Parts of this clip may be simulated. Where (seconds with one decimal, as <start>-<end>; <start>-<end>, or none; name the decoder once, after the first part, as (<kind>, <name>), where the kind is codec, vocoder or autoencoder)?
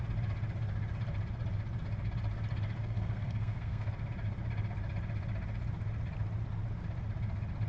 2.8-3.9 (codec, SNAC)